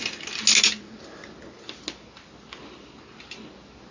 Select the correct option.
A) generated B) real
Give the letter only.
B